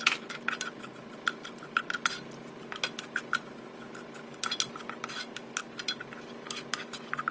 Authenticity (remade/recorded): recorded